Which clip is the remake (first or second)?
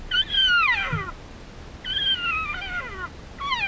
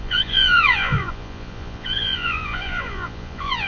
second